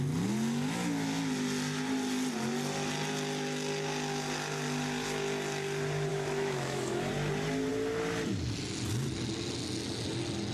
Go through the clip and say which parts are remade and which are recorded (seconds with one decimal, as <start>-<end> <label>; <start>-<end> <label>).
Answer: 0.0-6.1 recorded; 6.1-7.1 remade; 7.1-10.5 recorded